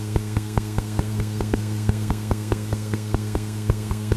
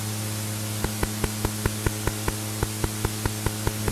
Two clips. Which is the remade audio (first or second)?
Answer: first